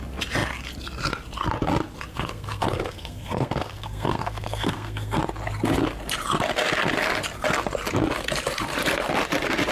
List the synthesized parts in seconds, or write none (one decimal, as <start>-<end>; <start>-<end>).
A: 2.1-5.2